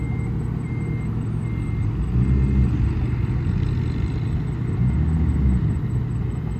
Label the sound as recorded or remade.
recorded